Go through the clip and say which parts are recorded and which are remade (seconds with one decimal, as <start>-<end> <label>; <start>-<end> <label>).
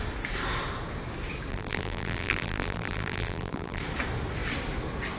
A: 0.0-1.5 recorded; 1.5-3.8 remade; 3.8-5.2 recorded